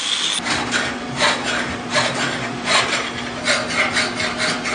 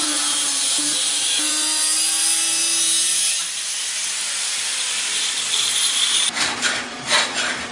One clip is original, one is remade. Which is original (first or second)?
first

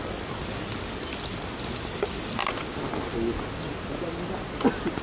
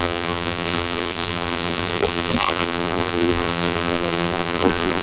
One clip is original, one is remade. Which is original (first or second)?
first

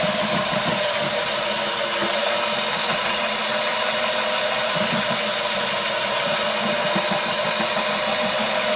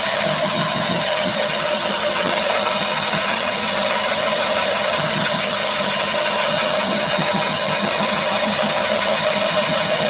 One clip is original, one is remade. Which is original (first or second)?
first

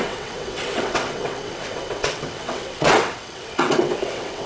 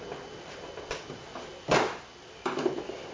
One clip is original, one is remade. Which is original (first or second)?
second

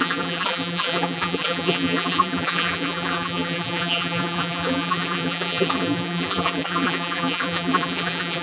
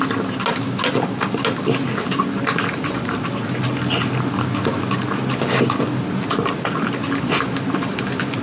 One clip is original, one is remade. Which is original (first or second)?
second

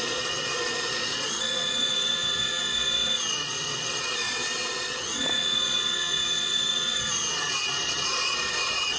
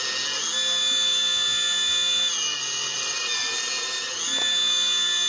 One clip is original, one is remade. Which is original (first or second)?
second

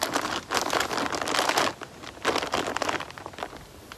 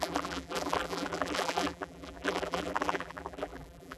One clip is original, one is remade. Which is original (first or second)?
first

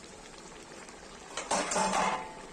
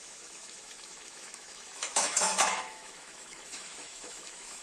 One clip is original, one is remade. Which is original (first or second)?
first